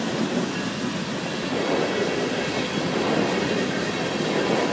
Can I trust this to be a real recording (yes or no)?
yes